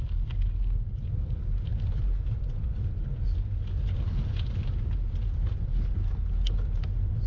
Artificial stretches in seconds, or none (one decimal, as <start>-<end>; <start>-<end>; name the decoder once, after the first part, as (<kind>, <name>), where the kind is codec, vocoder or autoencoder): none